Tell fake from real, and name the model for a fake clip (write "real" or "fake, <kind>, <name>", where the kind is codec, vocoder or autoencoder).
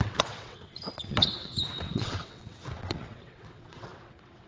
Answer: fake, vocoder, WaveNeXt